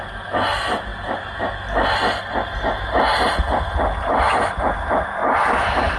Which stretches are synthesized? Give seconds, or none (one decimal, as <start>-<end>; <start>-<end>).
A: none